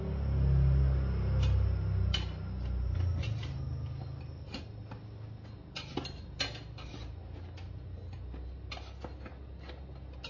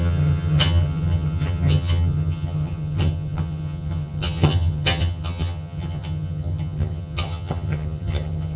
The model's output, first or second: second